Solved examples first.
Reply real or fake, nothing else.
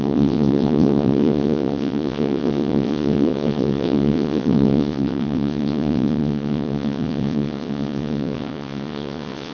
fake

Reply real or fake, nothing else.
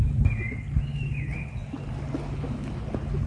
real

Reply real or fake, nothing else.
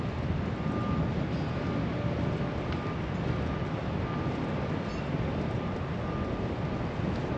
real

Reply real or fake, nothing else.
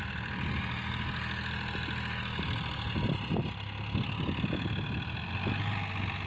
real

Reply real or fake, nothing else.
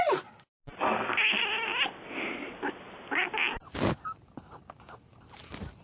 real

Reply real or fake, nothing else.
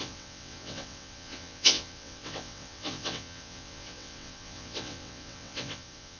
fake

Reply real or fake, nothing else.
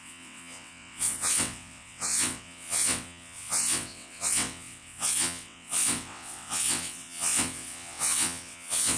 fake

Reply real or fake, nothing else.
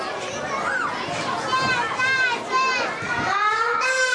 real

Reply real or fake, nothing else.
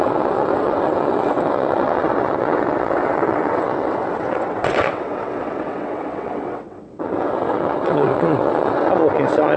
fake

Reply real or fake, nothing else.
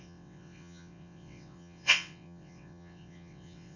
fake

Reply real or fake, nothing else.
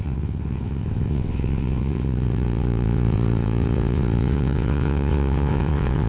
fake